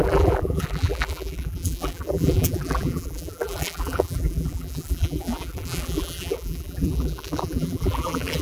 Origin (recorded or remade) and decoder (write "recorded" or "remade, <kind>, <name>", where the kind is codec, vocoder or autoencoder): remade, vocoder, BigVGAN v2